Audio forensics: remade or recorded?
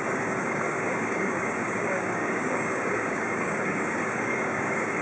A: remade